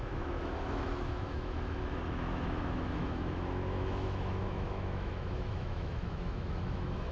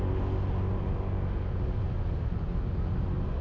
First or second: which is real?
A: second